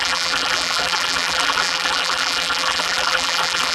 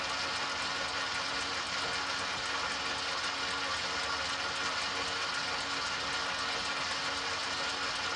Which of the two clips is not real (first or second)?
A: first